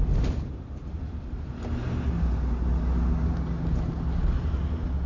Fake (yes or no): no